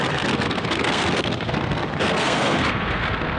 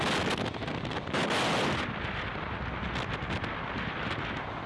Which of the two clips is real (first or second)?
second